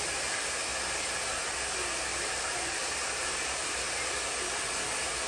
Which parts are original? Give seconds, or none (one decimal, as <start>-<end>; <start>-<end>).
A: 0.0-2.1; 4.1-5.3